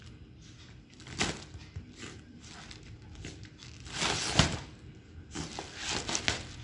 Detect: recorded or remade recorded